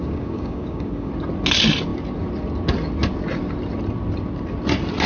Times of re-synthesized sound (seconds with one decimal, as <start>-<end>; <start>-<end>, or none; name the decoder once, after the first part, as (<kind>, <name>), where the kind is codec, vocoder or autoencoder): 0.0-1.1 (codec, DAC)